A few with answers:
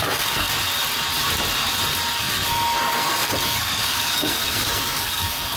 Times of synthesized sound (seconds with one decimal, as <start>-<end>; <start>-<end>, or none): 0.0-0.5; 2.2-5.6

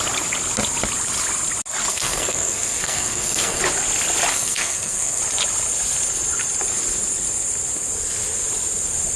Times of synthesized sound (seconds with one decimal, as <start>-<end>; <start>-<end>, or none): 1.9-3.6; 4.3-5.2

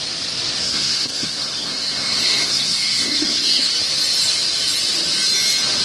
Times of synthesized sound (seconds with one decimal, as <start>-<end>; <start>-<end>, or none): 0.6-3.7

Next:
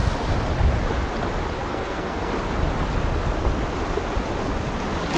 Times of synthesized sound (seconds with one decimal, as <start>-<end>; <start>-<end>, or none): 1.7-2.3

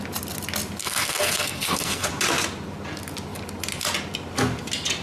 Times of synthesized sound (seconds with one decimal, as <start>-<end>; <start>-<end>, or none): 0.8-2.1